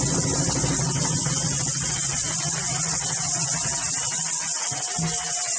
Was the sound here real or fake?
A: real